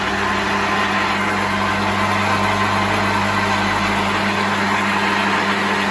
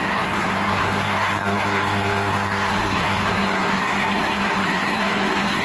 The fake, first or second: second